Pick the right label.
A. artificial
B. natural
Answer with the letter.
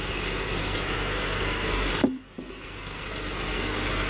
A